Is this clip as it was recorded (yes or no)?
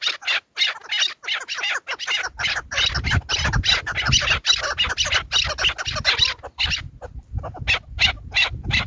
yes